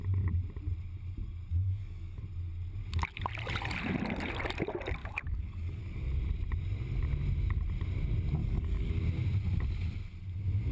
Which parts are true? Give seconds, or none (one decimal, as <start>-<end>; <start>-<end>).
0.0-1.5; 2.2-5.0; 5.8-8.4; 8.9-10.7

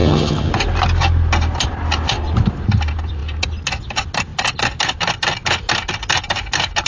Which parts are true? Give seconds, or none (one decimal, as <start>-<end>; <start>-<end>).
0.5-6.9

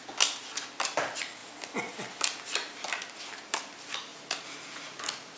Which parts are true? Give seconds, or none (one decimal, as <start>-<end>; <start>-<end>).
0.0-4.1

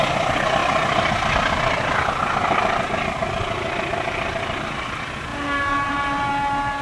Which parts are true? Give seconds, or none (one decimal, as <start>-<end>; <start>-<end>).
0.0-6.8

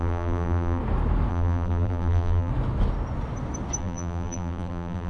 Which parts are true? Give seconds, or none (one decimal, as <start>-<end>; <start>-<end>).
0.8-1.3; 2.5-3.8

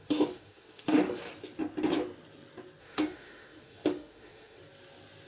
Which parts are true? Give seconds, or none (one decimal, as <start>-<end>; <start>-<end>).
1.3-2.8; 4.6-5.3